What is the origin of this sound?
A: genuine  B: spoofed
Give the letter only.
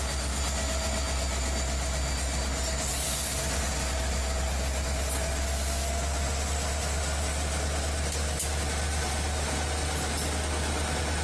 A